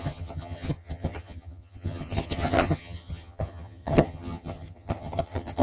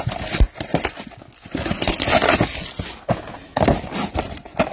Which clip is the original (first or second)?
second